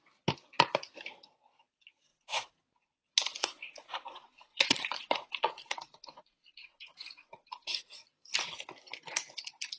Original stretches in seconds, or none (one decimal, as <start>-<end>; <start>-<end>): 0.0-2.1; 2.6-3.4; 7.9-9.8